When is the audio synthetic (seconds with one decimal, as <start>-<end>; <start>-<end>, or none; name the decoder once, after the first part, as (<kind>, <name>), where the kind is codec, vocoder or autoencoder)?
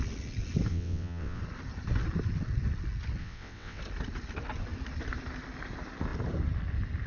0.7-1.4 (vocoder, WaveNeXt); 3.2-3.8